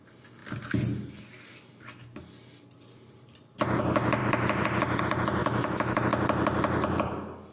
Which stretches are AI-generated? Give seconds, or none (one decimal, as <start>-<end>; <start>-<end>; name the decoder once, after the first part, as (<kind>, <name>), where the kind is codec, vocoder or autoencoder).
5.4-6.0 (autoencoder, DAC-VAE)